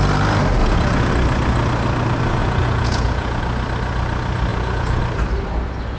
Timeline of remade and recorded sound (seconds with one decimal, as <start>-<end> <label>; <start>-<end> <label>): 0.0-0.6 recorded; 0.6-1.1 remade; 1.1-2.4 recorded; 2.4-3.4 remade; 3.4-4.5 recorded; 4.5-5.0 remade; 5.0-6.0 recorded